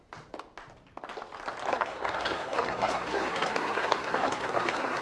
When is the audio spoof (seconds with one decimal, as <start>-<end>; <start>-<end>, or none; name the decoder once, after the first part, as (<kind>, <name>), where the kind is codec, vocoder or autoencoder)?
1.7-5.0 (codec, SNAC)